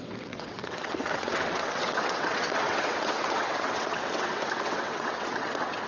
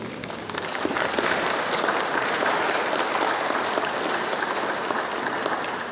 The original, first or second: second